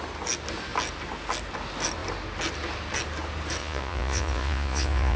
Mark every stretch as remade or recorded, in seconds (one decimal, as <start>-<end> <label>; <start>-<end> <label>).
0.0-3.6 recorded; 3.6-5.2 remade